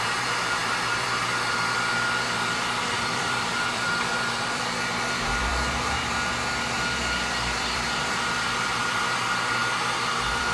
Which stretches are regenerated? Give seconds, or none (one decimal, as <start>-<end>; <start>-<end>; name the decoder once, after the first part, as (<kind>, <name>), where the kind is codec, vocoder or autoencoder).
0.0-5.5 (vocoder, BigVGAN v2); 7.0-9.6; 10.1-10.5